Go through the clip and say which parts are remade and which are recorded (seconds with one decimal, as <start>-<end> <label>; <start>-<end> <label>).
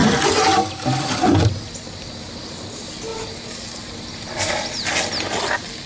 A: 0.0-5.9 recorded